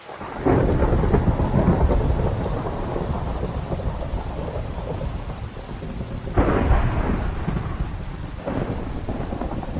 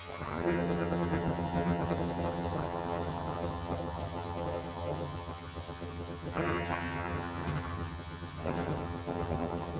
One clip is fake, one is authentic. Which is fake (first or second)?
second